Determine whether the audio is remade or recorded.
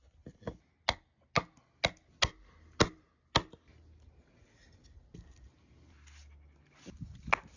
recorded